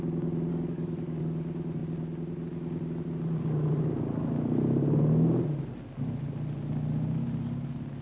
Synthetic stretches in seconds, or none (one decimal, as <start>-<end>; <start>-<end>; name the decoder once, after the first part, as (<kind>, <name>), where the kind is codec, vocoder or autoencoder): 0.5-1.2 (codec, DAC)